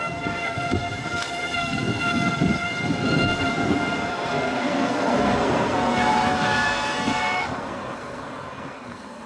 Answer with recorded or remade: remade